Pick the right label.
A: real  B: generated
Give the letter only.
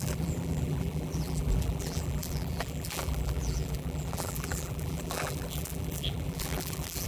B